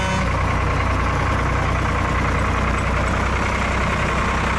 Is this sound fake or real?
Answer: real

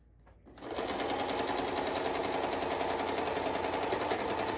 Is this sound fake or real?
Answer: real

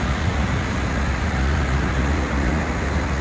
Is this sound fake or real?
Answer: fake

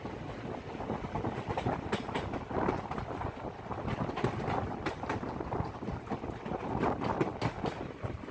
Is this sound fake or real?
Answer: real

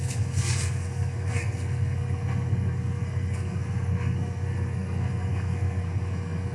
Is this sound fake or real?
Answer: fake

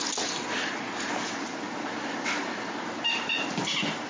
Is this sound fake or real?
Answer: real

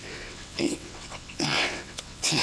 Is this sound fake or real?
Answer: fake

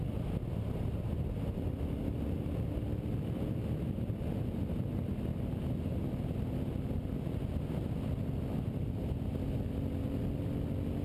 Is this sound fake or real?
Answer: real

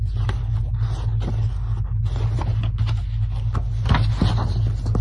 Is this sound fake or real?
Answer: real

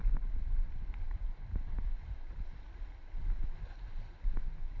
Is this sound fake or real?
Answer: real